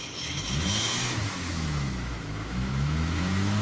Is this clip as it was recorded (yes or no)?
no